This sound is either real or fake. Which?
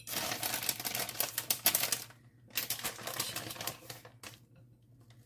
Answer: real